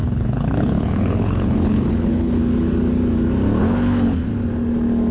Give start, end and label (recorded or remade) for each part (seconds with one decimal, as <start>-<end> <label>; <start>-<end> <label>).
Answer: 0.0-2.4 remade; 2.4-3.6 recorded; 3.6-4.3 remade; 4.3-5.1 recorded